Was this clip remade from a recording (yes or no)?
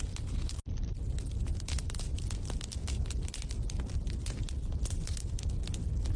no